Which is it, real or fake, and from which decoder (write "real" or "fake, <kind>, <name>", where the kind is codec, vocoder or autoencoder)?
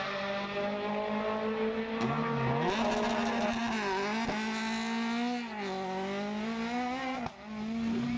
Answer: real